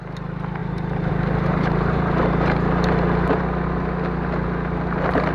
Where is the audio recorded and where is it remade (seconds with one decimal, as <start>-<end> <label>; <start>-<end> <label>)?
0.0-0.6 recorded; 0.6-1.1 remade; 1.1-1.5 recorded; 1.5-3.4 remade; 3.4-5.3 recorded